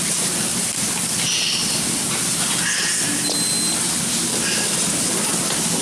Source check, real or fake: real